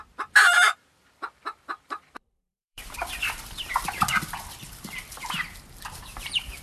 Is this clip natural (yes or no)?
no